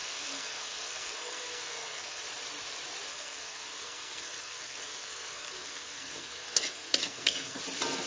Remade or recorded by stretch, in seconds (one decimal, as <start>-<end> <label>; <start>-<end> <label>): 0.0-2.2 remade; 2.2-3.1 recorded; 3.1-7.6 remade; 7.6-8.1 recorded